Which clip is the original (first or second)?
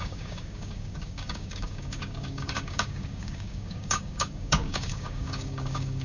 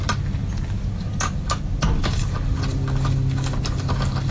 second